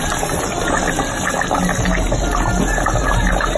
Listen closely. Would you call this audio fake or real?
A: real